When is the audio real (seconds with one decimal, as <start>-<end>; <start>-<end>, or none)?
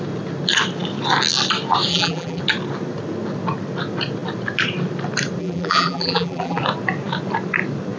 0.0-1.9; 2.4-5.4; 6.6-8.0